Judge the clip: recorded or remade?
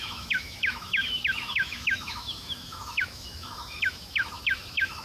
remade